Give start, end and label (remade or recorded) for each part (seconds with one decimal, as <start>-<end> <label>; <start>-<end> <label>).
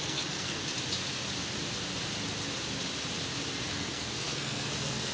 0.0-0.6 remade; 0.6-3.7 recorded; 3.7-5.1 remade